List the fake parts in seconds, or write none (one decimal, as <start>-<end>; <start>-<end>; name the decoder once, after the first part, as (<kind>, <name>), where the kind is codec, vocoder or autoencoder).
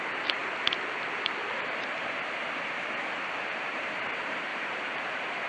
0.0-0.4 (vocoder, BigVGAN v2); 3.2-5.5